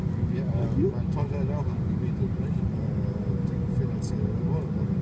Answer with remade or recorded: remade